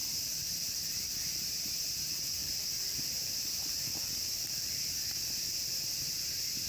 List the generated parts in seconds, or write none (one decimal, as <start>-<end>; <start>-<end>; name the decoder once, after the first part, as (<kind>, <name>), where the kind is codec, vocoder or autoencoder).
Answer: 0.0-1.1 (vocoder, BigVGAN v2); 2.4-4.8